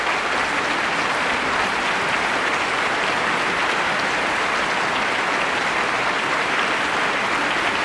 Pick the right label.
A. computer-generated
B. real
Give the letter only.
B